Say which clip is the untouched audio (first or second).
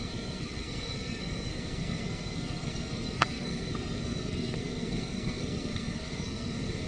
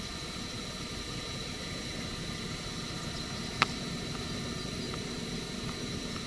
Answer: second